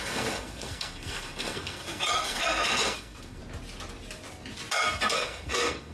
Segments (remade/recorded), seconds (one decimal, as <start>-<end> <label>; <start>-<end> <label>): 0.0-3.4 remade; 3.4-4.7 recorded; 4.7-5.9 remade

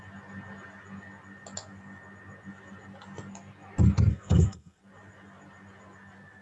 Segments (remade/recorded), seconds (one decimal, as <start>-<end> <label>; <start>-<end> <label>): 0.0-4.1 recorded; 4.1-4.8 remade; 4.8-6.4 recorded

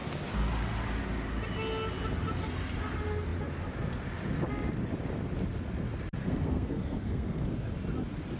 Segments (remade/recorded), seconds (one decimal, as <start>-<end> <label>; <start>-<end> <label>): 0.0-6.2 recorded; 6.2-7.5 remade; 7.5-8.4 recorded

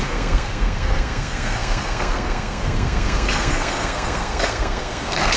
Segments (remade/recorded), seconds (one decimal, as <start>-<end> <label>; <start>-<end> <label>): 0.0-5.4 remade